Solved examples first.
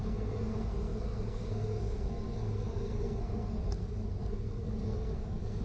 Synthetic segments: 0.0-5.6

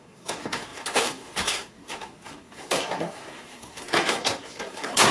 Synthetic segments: 0.0-5.1

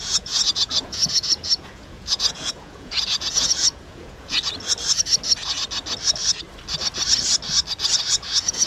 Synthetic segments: 0.0-4.4; 8.1-8.7

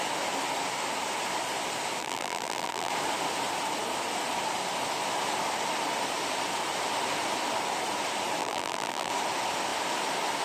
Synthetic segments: 2.0-2.9; 8.4-9.1

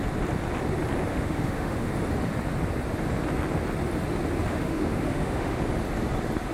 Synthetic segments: 1.1-1.9; 4.5-5.6

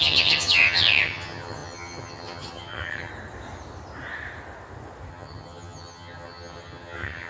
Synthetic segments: 0.0-3.1; 5.1-7.3

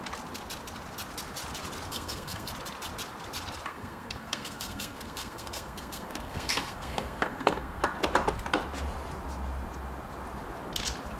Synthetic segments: 1.9-2.5; 3.7-7.8

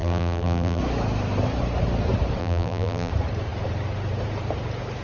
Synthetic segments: 0.0-0.8; 2.4-3.1